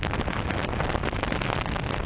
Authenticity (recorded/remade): recorded